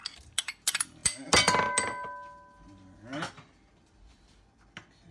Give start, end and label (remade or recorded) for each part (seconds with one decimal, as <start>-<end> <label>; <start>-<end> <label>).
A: 0.0-5.1 recorded